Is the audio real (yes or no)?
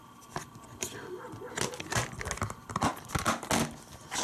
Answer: yes